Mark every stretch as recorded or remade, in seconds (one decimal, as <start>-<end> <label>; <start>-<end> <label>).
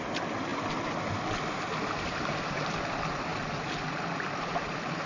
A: 0.0-5.1 recorded